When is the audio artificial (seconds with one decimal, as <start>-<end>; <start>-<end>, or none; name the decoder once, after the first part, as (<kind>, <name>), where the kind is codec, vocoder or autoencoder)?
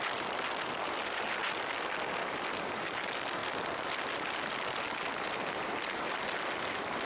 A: 3.4-3.9 (vocoder, BigVGAN v2)